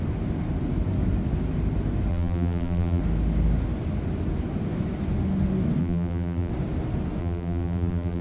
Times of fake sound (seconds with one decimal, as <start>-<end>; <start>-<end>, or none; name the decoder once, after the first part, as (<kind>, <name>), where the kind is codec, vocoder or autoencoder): 2.1-3.0 (vocoder, BigVGAN v2); 5.8-6.5; 7.2-8.2